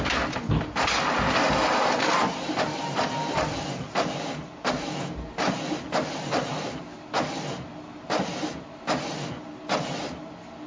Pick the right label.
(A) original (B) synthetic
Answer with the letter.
A